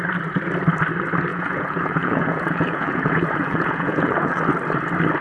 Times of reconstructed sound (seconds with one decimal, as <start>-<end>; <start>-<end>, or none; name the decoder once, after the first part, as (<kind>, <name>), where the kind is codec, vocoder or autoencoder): 1.3-4.4 (vocoder, Vocos)